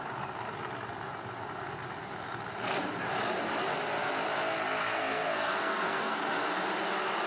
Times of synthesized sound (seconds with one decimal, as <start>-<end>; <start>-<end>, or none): 4.9-6.2